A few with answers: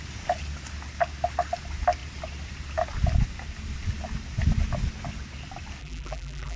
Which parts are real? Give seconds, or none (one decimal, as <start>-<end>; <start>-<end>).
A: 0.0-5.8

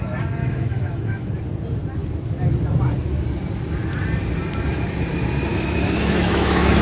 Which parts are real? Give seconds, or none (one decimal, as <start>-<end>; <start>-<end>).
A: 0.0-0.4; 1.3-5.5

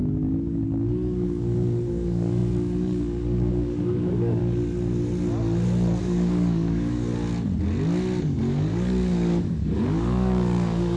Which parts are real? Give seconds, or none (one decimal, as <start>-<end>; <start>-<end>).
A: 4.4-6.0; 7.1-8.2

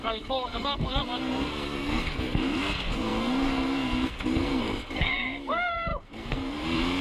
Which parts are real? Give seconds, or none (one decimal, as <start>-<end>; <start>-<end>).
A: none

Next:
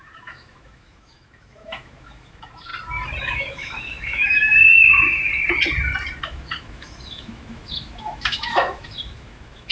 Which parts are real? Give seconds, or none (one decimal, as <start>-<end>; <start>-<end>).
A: 2.7-3.2; 5.3-6.2

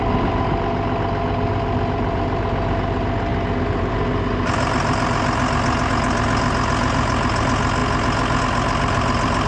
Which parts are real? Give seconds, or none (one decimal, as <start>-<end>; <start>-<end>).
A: 0.0-9.5

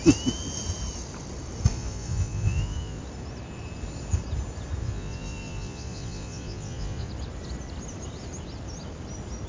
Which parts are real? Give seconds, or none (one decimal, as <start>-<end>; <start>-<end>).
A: 0.0-1.7; 3.0-4.8; 7.1-9.5

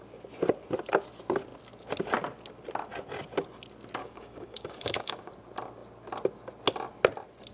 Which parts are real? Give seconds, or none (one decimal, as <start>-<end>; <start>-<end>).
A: 0.0-4.0; 5.3-7.5